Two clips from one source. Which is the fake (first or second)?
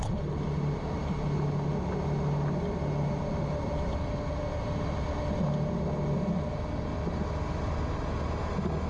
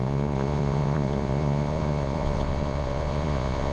second